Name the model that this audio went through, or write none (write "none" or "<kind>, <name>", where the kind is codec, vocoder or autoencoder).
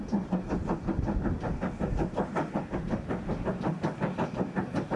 none